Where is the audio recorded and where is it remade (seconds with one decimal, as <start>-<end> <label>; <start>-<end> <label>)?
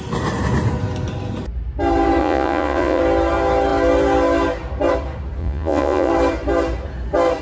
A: 0.0-2.2 recorded; 2.2-3.0 remade; 3.0-5.4 recorded; 5.4-6.1 remade; 6.1-7.4 recorded